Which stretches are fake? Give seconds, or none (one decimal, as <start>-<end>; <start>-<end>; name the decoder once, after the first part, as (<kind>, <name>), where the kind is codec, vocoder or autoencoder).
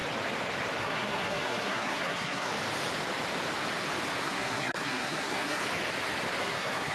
0.8-2.5 (codec, SNAC); 4.2-5.6; 6.4-6.9